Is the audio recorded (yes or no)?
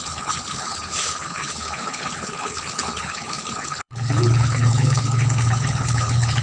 no